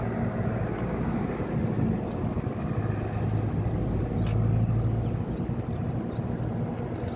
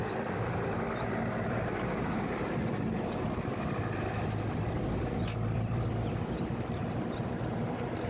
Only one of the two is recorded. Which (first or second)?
first